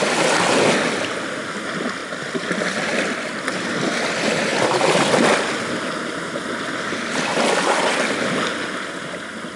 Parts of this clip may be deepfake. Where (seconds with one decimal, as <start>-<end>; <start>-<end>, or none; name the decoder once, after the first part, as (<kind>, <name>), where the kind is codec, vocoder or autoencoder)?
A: none

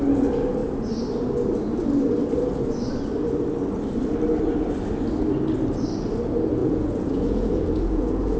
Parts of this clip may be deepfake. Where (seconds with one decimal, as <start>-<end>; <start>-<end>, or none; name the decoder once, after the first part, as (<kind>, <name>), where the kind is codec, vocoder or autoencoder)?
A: 6.6-8.4 (vocoder, Vocos)

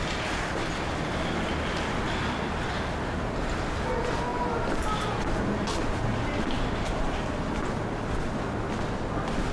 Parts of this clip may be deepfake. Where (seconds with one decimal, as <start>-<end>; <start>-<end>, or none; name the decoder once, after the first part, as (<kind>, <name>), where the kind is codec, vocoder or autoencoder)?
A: none

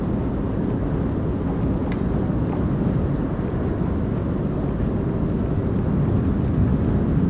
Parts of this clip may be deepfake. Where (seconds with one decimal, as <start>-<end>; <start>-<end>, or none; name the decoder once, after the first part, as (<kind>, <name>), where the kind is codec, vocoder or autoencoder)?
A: none